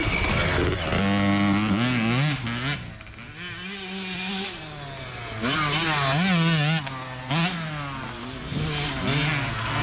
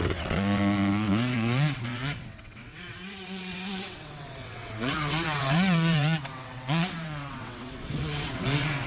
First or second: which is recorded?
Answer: first